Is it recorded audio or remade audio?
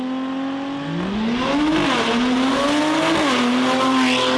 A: recorded